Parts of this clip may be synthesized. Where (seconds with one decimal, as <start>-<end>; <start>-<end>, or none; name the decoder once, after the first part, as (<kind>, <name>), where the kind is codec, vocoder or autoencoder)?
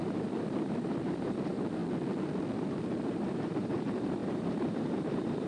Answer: 0.0-1.8 (vocoder, BigVGAN v2); 2.5-5.5